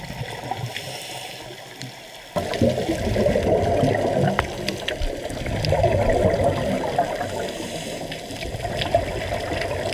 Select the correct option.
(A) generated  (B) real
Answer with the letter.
B